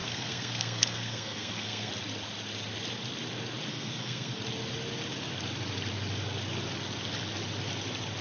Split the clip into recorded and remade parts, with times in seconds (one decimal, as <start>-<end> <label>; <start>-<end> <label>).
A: 0.0-1.9 remade; 1.9-3.7 recorded; 3.7-4.4 remade; 4.4-8.2 recorded